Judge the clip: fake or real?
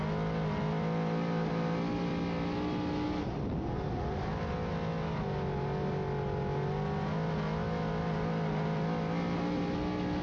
real